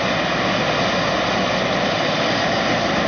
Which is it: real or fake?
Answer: real